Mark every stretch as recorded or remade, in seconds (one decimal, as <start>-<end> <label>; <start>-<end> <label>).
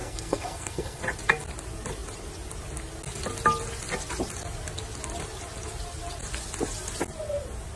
0.0-1.0 remade; 1.0-7.8 recorded